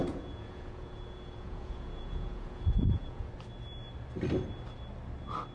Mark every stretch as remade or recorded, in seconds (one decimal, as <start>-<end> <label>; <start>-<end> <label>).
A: 0.0-3.3 remade; 3.3-5.5 recorded